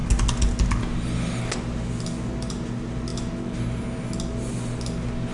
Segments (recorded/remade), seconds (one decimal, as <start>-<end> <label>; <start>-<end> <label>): 0.0-5.3 recorded